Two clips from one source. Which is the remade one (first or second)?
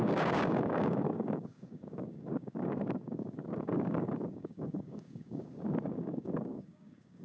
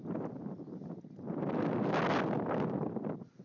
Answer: first